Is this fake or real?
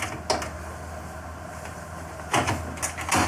real